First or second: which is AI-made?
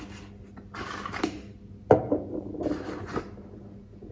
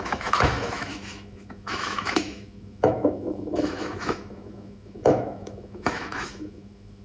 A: second